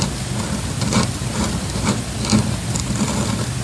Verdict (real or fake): real